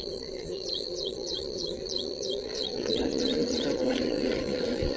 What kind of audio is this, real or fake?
fake